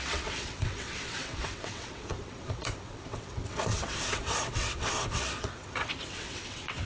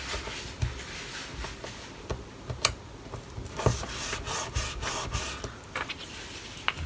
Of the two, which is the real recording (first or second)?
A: second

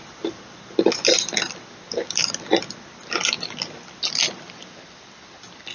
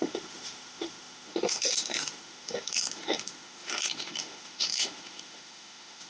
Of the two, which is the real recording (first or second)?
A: first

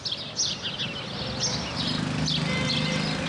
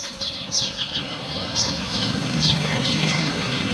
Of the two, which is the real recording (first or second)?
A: first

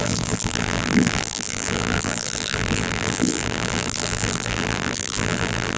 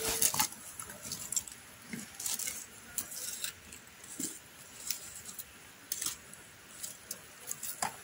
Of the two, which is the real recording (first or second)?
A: second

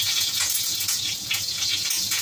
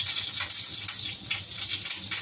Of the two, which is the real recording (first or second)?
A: second